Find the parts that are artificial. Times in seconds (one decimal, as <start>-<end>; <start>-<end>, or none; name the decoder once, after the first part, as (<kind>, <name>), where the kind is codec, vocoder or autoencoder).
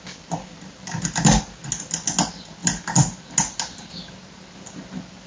none